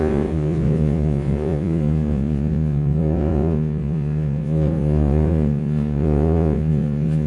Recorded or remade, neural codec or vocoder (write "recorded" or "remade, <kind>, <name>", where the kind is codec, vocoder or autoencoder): remade, vocoder, Vocos